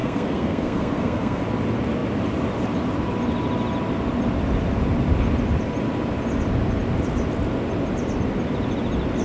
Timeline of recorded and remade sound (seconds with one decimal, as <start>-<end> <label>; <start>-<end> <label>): 0.0-1.4 remade; 1.4-9.2 recorded

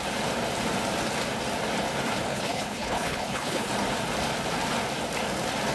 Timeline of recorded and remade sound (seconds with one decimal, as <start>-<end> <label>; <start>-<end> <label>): 0.0-2.3 recorded; 2.3-3.7 remade; 3.7-5.7 recorded

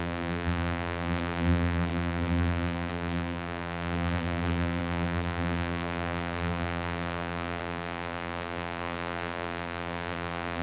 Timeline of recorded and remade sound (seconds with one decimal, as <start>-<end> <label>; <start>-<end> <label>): 0.0-10.6 remade

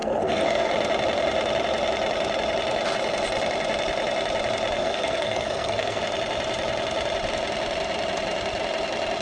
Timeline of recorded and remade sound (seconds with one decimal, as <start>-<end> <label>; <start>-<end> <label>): 0.0-0.7 remade; 0.7-4.8 recorded; 4.8-6.0 remade; 6.0-9.2 recorded

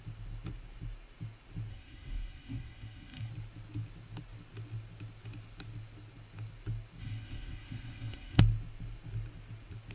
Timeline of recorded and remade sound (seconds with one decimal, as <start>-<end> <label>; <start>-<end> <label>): 0.0-1.7 recorded; 1.7-3.3 remade; 3.3-7.0 recorded; 7.0-8.4 remade; 8.4-9.9 recorded

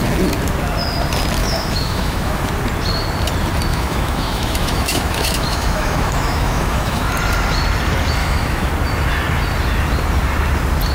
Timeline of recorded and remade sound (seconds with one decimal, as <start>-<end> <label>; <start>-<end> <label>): 0.0-1.4 recorded; 1.4-2.5 remade; 2.5-3.7 recorded; 3.7-7.1 remade; 7.1-8.2 recorded; 8.2-8.7 remade; 8.7-10.9 recorded

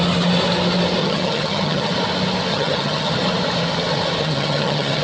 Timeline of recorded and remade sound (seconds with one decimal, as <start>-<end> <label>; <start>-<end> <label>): 0.0-1.0 recorded; 1.0-1.9 remade; 1.9-2.5 recorded; 2.5-3.1 remade; 3.1-4.2 recorded; 4.2-5.0 remade